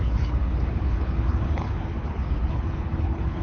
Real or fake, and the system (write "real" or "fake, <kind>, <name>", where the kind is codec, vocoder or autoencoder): fake, codec, HILCodec